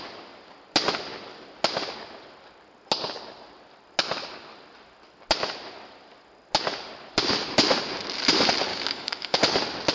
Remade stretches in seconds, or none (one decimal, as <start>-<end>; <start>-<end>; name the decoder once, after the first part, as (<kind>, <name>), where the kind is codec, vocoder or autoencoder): 8.7-9.4 (codec, DAC)